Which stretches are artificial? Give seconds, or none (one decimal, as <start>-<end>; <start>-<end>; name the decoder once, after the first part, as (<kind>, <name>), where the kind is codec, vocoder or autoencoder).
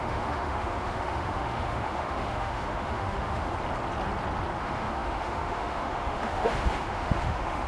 0.0-3.5 (autoencoder, DAC-VAE); 4.6-7.7